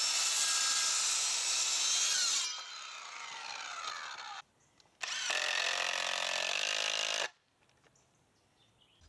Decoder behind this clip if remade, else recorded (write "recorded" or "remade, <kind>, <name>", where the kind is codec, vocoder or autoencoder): recorded